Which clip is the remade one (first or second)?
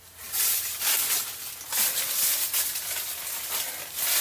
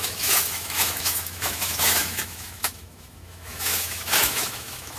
second